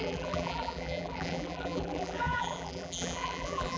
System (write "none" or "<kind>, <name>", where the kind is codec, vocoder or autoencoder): vocoder, BigVGAN v2